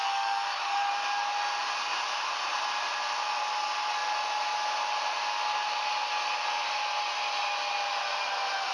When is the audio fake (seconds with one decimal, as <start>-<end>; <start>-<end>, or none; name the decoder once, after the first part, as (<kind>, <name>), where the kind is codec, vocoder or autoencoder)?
0.0-0.9 (codec, DAC)